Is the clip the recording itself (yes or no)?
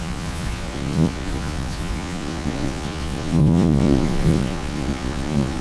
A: no